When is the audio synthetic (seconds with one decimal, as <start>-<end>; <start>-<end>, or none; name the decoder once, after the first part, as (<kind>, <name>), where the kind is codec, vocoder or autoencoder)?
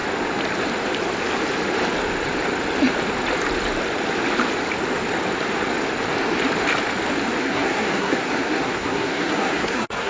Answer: 7.4-10.1 (codec, SNAC)